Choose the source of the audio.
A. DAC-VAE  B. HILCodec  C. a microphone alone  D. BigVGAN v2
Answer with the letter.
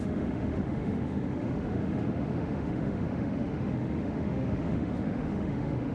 A